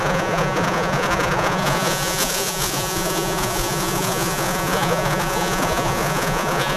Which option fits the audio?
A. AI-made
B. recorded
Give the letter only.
A